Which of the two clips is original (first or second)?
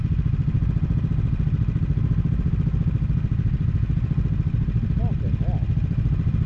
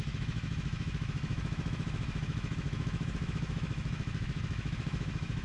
first